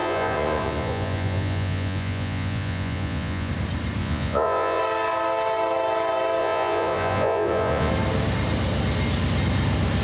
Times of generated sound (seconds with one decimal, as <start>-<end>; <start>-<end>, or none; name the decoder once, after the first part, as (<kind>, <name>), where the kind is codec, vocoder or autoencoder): 0.0-3.5 (vocoder, Vocos); 4.0-4.8; 6.4-7.9